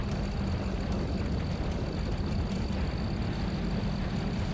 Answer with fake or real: real